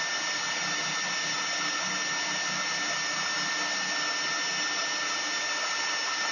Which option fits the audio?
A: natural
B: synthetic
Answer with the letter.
A